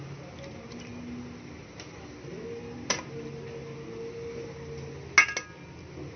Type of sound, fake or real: real